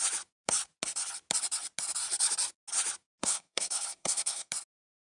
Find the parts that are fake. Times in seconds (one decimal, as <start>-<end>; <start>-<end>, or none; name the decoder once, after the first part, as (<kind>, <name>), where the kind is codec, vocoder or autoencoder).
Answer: 3.2-4.5 (codec, SNAC)